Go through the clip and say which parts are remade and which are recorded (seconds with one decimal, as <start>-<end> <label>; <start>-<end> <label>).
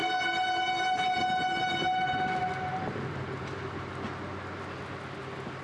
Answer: 0.0-5.6 recorded